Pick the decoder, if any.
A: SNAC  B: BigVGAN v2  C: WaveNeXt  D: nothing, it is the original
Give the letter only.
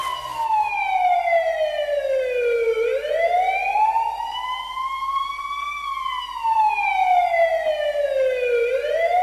D